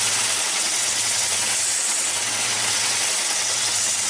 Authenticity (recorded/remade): remade